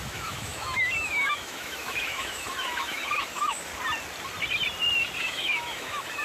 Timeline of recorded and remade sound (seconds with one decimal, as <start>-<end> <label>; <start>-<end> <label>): 0.0-3.7 remade; 3.7-5.2 recorded; 5.2-6.2 remade